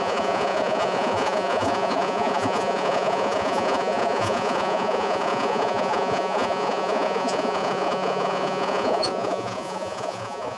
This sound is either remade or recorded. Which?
remade